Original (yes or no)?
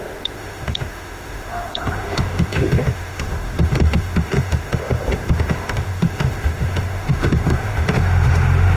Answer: no